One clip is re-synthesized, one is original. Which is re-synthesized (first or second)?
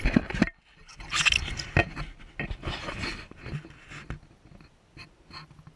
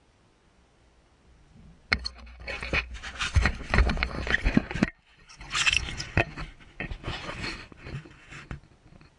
second